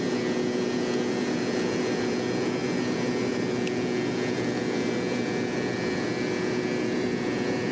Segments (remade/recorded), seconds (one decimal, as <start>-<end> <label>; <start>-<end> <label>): 0.0-7.7 recorded